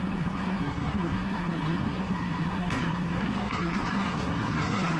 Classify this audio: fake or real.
fake